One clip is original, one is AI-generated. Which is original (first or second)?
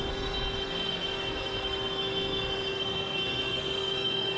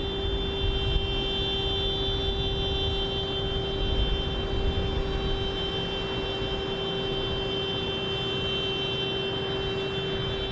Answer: second